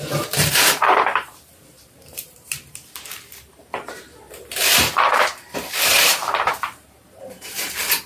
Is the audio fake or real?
fake